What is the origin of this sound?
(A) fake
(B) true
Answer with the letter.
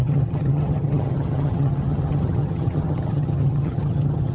A